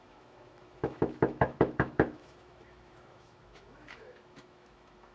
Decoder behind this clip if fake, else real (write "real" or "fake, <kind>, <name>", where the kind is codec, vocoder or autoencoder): fake, autoencoder, DAC-VAE